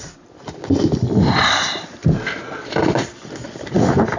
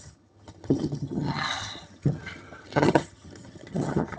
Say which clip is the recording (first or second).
first